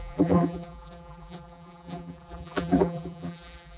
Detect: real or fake fake